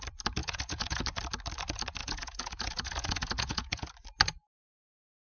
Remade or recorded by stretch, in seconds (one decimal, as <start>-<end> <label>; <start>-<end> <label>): 0.0-0.4 recorded; 0.4-1.0 remade; 1.0-2.0 recorded; 2.0-3.9 remade; 3.9-5.2 recorded